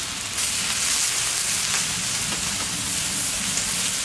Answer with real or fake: real